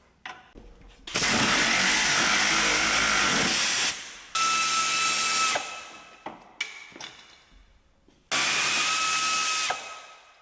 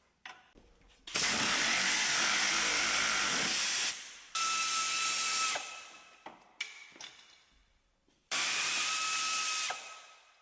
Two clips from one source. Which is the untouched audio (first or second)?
first